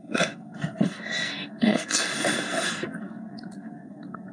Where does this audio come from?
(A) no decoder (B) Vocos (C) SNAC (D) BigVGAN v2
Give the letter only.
C